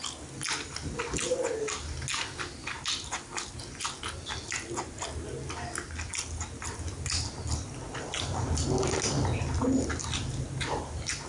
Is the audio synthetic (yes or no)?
no